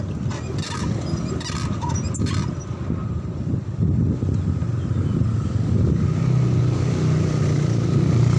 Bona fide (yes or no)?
yes